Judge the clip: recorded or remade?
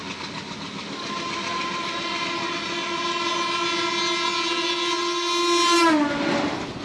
recorded